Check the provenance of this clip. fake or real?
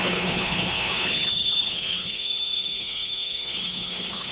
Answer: fake